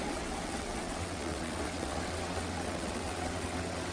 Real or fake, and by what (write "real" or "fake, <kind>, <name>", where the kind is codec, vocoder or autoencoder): fake, vocoder, WaveNeXt